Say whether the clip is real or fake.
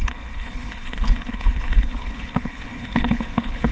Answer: fake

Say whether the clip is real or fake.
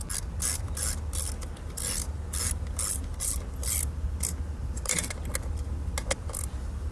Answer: real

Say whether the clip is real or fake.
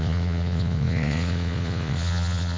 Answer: fake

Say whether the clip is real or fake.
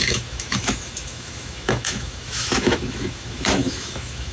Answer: fake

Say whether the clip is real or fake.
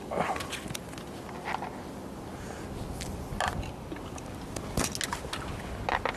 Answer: real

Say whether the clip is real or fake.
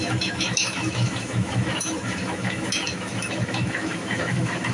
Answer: fake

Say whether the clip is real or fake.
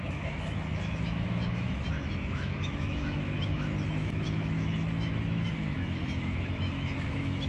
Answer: fake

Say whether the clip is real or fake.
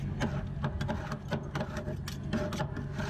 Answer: real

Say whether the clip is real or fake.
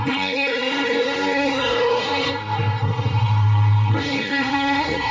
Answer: fake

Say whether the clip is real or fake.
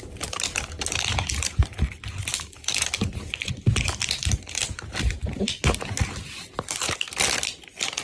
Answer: real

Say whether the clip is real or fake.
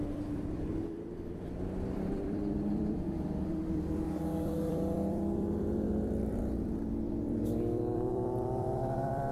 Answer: fake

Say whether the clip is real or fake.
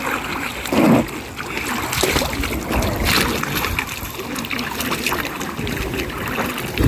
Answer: real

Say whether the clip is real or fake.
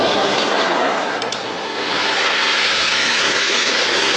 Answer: fake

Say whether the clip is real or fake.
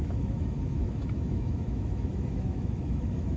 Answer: fake